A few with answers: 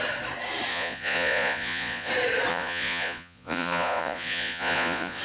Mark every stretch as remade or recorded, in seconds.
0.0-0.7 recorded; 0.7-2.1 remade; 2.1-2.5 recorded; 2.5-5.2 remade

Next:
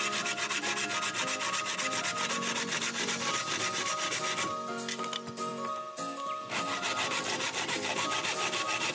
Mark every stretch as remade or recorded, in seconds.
0.0-8.9 recorded

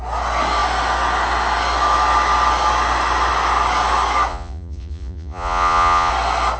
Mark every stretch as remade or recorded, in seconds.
0.0-4.3 recorded; 4.3-6.1 remade; 6.1-6.6 recorded

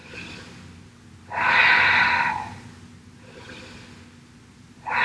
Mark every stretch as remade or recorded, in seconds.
0.0-5.0 recorded

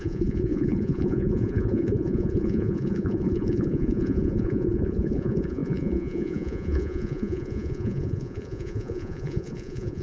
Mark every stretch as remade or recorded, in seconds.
0.0-10.0 remade

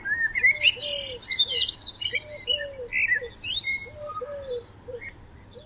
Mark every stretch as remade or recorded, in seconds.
0.0-5.7 recorded

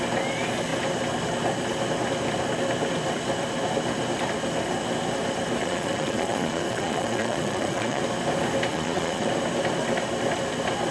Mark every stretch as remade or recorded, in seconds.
0.0-5.6 recorded; 5.6-8.0 remade; 8.0-8.7 recorded; 8.7-9.3 remade; 9.3-10.9 recorded